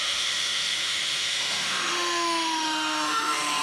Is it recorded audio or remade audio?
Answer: remade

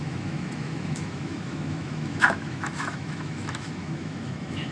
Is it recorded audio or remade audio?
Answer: remade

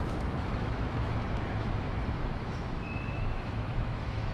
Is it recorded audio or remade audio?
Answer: remade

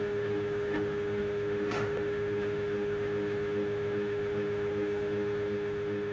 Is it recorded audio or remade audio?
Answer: remade